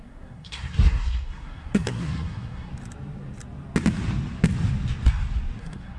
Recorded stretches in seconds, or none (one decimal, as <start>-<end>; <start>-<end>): 2.7-5.6